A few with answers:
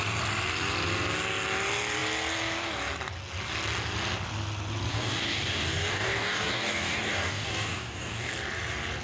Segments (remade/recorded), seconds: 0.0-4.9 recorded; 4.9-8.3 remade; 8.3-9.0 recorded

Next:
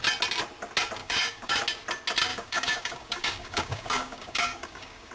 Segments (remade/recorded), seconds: 0.0-1.0 recorded; 1.0-1.6 remade; 1.6-2.3 recorded; 2.3-5.1 remade

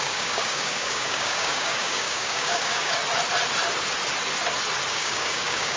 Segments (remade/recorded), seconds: 0.0-3.0 remade; 3.0-4.9 recorded; 4.9-5.8 remade

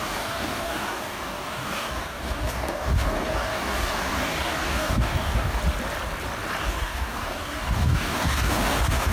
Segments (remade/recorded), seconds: 0.0-5.6 remade; 5.6-6.6 recorded; 6.6-9.1 remade

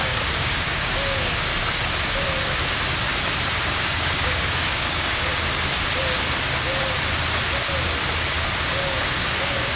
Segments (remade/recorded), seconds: 0.0-1.5 remade; 1.5-3.5 recorded; 3.5-5.3 remade; 5.3-8.6 recorded; 8.6-9.8 remade

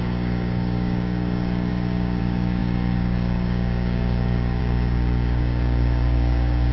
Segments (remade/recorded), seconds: 0.0-6.7 remade

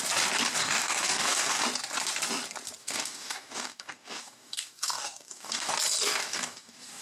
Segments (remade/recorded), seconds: 0.0-0.6 recorded; 0.6-1.6 remade; 1.6-2.8 recorded; 2.8-5.7 remade; 5.7-6.2 recorded; 6.2-7.0 remade